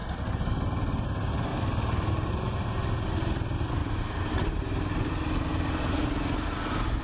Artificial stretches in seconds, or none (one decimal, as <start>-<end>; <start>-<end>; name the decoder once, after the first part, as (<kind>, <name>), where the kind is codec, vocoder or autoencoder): 1.5-2.3 (vocoder, BigVGAN v2); 3.8-5.1